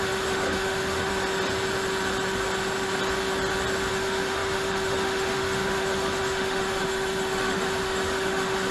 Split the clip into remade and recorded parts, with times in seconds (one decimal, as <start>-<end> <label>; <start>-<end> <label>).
0.0-1.1 remade; 1.1-3.9 recorded; 3.9-8.7 remade